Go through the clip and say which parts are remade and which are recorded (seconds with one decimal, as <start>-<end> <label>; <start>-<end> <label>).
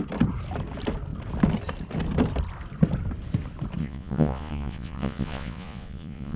0.0-3.8 recorded; 3.8-6.4 remade